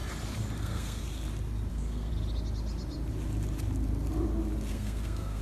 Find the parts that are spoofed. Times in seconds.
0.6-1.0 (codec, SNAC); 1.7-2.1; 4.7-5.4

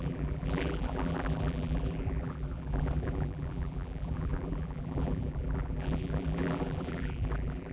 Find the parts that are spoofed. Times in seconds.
0.0-7.7 (vocoder, BigVGAN v2)

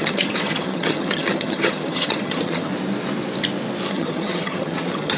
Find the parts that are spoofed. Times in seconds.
0.0-2.7 (vocoder, HiFi-GAN); 3.9-5.2

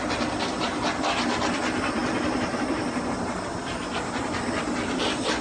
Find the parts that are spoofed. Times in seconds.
0.0-5.4 (vocoder, BigVGAN v2)

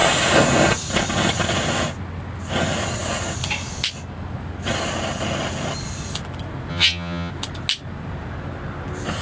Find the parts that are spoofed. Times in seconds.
6.7-7.3 (vocoder, HiFi-GAN)

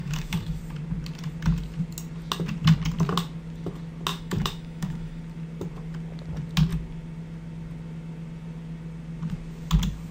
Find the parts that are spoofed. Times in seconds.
0.0-0.6 (autoencoder, DAC-VAE); 4.1-5.2

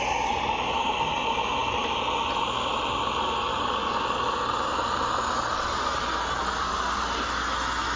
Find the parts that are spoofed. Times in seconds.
none